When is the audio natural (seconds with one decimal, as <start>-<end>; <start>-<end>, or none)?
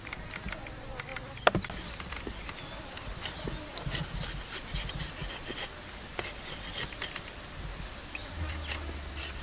0.0-9.4